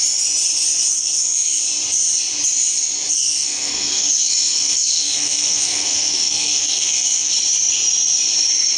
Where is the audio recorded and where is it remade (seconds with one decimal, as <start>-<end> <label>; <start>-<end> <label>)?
0.0-0.9 recorded; 0.9-1.6 remade; 1.6-3.1 recorded; 3.1-7.3 remade; 7.3-8.8 recorded